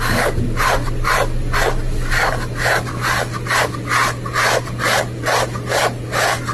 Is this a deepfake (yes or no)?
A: no